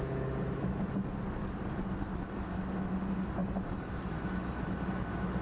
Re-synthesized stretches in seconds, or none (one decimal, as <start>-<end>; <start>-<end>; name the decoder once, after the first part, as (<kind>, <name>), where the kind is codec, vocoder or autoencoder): 3.4-4.3 (vocoder, BigVGAN v2)